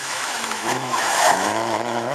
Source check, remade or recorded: remade